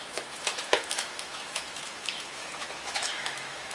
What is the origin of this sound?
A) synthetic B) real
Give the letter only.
A